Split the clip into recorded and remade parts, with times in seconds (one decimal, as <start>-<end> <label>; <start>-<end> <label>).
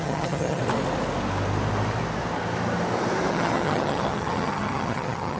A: 0.0-0.6 remade; 0.6-3.3 recorded; 3.3-5.4 remade